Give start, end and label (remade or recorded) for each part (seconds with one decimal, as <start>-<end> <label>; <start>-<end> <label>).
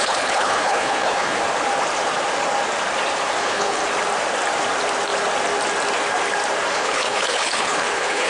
0.0-1.4 remade; 1.4-3.4 recorded; 3.4-3.8 remade; 3.8-6.7 recorded; 6.7-8.3 remade